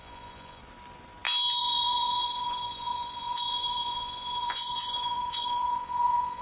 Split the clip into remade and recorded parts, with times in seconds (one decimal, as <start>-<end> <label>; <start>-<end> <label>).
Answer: 0.0-0.6 remade; 0.6-1.6 recorded; 1.6-6.4 remade